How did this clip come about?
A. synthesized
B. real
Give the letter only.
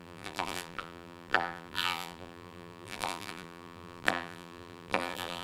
A